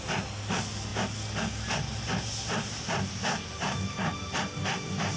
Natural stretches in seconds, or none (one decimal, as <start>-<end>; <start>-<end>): 0.0-5.2